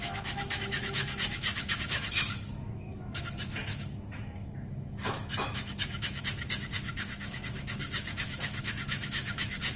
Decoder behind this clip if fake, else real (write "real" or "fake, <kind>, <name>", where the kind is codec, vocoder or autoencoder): fake, autoencoder, DAC-VAE